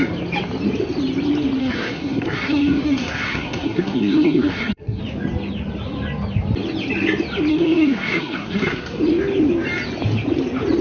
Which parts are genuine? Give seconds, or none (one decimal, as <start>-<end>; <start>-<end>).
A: 0.0-1.6; 5.0-7.5; 9.0-10.8